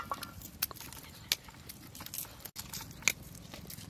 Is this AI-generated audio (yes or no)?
no